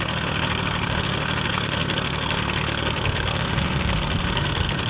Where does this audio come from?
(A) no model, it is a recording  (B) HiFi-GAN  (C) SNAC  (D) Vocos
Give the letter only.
C